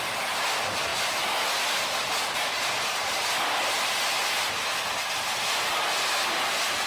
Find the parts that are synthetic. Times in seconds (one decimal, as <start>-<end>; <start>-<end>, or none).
none